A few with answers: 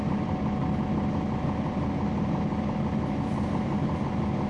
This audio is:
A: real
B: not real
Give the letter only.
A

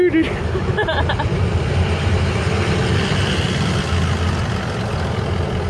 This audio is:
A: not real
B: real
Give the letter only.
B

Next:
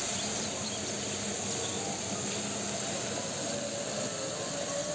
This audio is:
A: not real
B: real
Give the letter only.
A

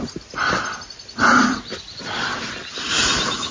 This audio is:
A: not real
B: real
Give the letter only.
B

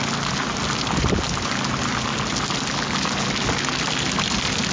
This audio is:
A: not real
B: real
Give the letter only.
B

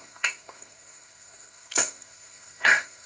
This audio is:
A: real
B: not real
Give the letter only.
B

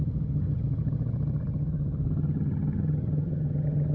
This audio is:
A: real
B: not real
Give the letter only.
B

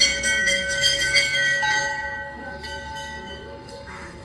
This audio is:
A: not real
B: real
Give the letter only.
A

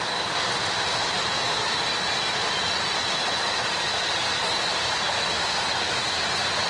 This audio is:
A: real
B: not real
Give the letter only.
A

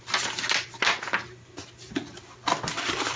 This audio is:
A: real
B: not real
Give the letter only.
A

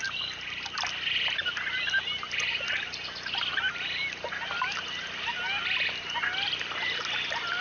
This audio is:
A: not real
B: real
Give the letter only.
B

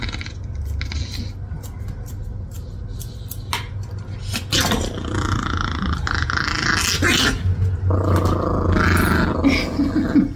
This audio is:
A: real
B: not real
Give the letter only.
A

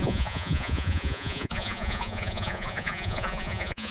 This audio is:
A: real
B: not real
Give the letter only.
B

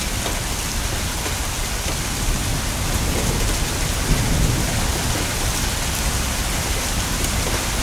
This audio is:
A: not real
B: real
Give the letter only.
B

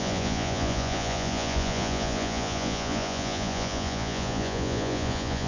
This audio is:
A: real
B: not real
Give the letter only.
B